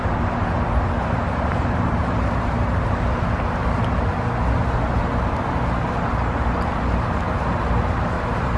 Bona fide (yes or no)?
yes